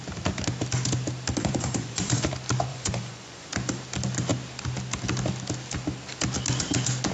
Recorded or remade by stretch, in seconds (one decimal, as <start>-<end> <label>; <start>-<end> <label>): 0.0-1.4 recorded; 1.4-2.3 remade; 2.3-2.7 recorded; 2.7-3.5 remade; 3.5-7.1 recorded